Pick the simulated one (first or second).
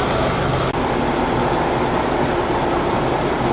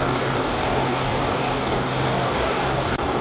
second